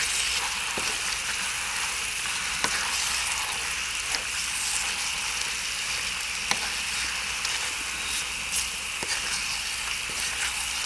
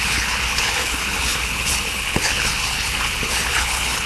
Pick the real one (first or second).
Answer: first